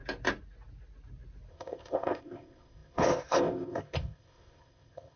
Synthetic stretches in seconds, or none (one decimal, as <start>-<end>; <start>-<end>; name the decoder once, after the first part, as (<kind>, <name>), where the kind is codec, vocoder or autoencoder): 1.5-5.2 (codec, ZipCodec)